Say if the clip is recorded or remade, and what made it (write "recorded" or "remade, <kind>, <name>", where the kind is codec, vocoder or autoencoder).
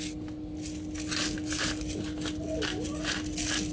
recorded